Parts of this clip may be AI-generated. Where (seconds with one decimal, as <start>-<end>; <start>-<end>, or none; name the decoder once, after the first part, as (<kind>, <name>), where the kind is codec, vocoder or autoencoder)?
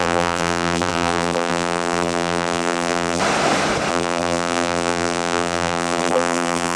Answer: 0.0-3.2 (vocoder, BigVGAN v2); 3.9-6.8